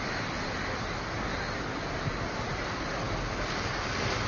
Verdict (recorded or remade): recorded